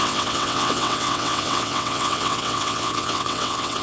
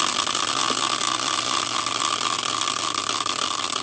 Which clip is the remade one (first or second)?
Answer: first